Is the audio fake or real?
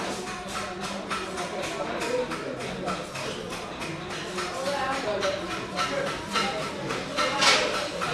real